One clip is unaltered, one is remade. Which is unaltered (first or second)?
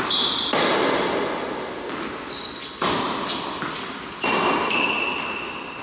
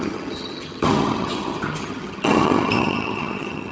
first